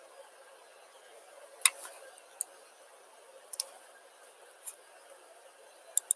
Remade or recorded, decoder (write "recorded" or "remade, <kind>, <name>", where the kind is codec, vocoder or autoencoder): recorded